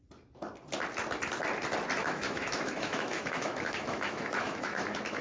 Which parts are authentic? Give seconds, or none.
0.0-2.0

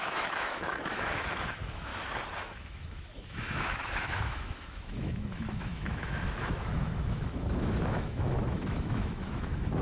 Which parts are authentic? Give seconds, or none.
1.9-2.4